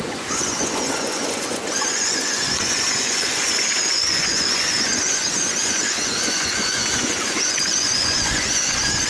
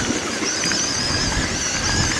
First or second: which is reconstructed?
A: first